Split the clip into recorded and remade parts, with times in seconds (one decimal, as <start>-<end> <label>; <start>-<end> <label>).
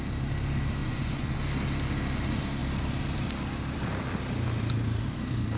0.0-0.8 recorded; 0.8-1.4 remade; 1.4-5.6 recorded